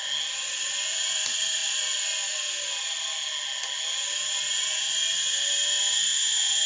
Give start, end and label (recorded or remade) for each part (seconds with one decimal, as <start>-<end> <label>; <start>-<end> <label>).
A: 0.0-6.7 recorded